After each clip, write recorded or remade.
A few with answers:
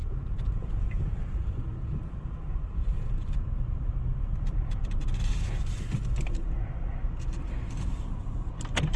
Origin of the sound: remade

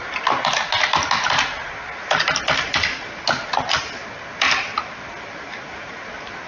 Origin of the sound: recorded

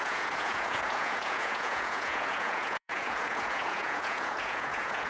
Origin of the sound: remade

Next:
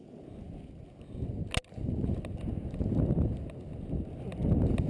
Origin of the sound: recorded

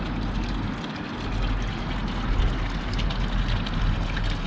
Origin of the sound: recorded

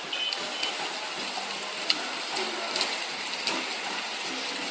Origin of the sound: recorded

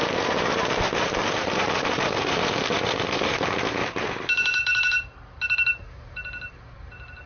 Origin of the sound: remade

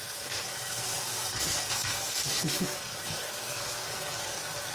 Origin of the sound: remade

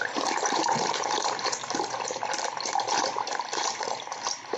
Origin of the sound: remade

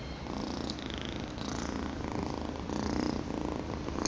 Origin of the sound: recorded